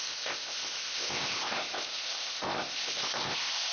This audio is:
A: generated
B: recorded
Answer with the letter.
A